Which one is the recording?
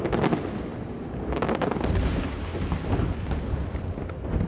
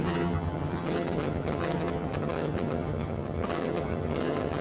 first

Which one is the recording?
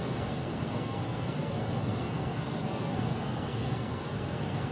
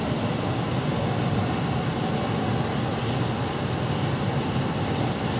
second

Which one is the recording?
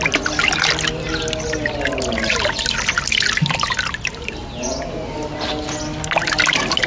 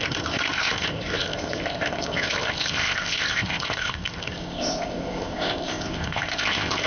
first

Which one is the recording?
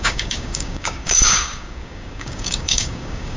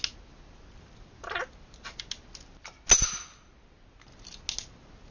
second